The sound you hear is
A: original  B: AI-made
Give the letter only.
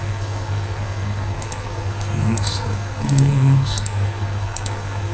B